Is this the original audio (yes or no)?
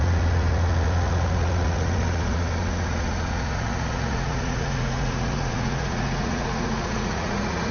no